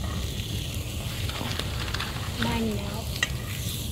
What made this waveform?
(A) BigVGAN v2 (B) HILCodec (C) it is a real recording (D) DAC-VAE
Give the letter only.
C